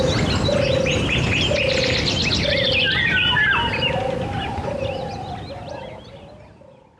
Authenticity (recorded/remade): recorded